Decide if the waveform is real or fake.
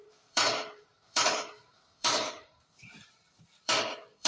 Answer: fake